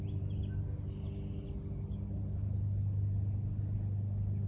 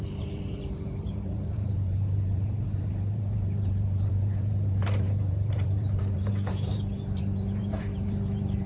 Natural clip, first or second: first